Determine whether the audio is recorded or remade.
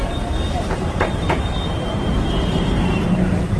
remade